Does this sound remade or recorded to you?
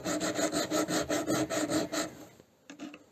recorded